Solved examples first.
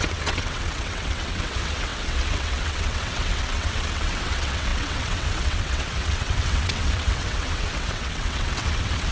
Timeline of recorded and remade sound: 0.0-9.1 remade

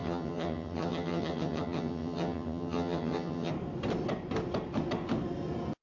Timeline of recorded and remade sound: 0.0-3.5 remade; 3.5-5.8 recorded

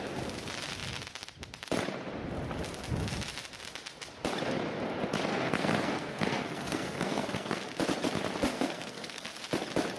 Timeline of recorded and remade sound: 0.0-5.3 recorded; 5.3-7.6 remade; 7.6-8.5 recorded; 8.5-9.4 remade; 9.4-10.0 recorded